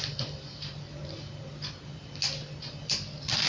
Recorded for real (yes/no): yes